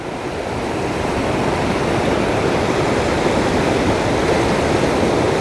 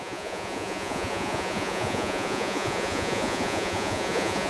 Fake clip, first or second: second